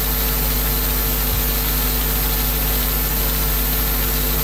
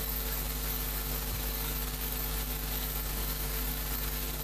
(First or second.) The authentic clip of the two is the first